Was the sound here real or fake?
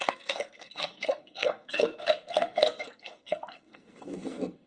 fake